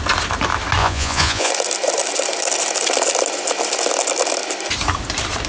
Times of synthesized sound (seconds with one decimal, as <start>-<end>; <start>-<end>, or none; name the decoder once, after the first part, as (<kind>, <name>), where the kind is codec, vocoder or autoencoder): 0.8-1.5 (vocoder, Vocos)

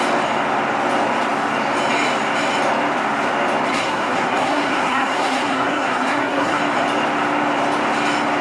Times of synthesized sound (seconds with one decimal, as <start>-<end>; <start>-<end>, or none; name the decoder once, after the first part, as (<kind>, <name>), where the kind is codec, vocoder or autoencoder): 3.7-6.6 (codec, SNAC)

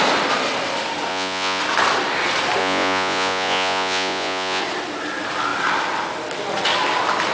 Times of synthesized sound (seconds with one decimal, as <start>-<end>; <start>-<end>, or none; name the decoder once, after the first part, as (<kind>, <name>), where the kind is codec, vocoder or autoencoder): 1.1-1.6 (vocoder, Vocos); 2.6-4.6

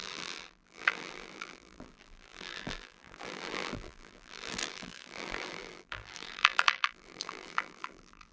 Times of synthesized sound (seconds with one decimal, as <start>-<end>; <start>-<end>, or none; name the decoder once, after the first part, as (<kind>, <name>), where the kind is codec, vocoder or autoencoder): 0.0-8.3 (vocoder, BigVGAN v2)

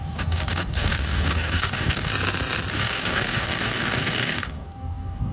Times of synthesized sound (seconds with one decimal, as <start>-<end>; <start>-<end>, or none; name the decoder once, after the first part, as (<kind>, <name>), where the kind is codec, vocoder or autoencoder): 0.0-2.1 (codec, DAC); 2.7-5.3